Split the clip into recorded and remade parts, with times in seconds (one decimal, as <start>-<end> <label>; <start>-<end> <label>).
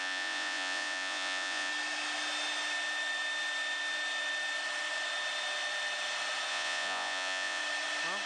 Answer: 0.0-1.7 remade; 1.7-6.5 recorded; 6.5-7.6 remade; 7.6-8.3 recorded